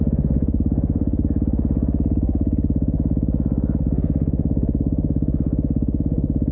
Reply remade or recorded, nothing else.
remade